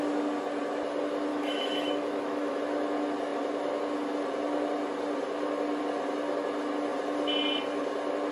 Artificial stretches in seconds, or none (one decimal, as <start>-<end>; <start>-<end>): 1.3-2.6